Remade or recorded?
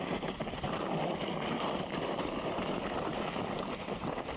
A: recorded